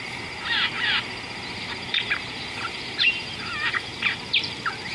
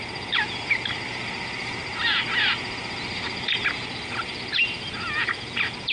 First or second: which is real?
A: second